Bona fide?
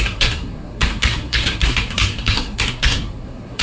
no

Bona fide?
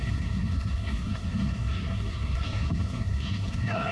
no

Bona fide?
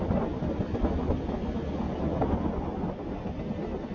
yes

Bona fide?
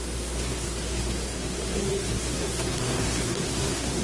no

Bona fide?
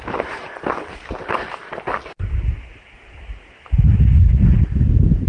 yes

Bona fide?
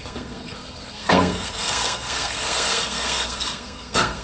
no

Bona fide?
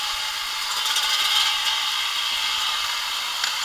yes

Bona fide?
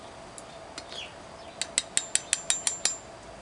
yes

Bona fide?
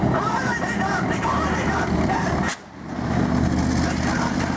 yes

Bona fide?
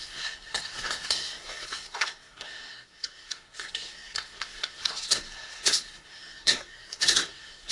no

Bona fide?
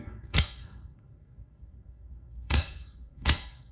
no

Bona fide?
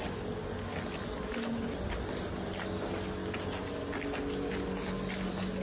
yes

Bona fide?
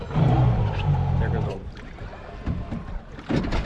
yes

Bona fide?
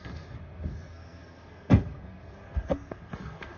no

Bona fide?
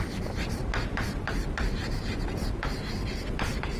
yes